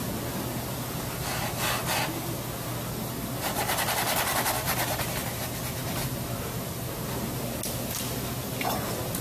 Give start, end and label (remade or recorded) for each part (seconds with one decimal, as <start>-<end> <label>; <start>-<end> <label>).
0.0-9.2 recorded